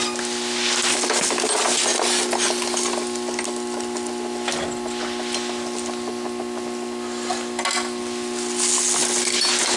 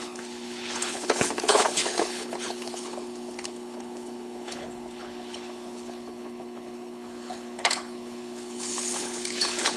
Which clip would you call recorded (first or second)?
first